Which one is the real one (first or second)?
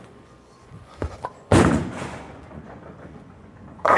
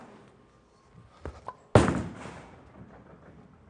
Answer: second